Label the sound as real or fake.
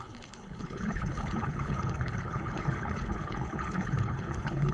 fake